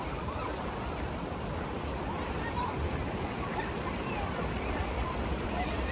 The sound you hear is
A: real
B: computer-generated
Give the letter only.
B